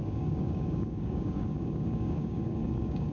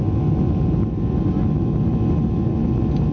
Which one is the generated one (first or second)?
first